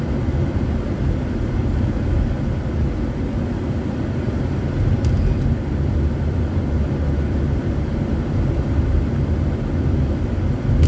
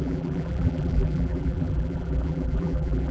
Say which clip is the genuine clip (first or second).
first